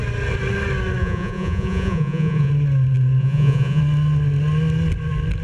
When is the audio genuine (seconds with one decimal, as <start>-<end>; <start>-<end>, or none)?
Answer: 0.0-1.0; 2.5-3.2; 3.8-5.4